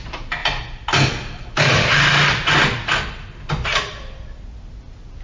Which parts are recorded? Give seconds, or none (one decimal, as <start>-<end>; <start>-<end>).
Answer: 0.0-5.2